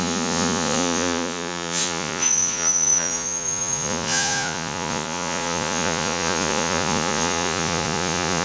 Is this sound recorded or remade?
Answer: remade